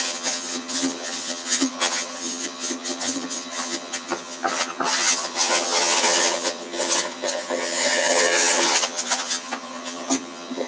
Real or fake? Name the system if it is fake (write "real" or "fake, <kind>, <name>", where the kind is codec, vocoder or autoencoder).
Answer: fake, vocoder, HiFi-GAN